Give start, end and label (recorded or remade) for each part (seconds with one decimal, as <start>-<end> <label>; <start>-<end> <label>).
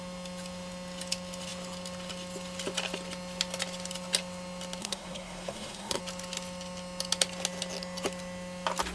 0.0-4.8 recorded; 4.8-6.0 remade; 6.0-8.9 recorded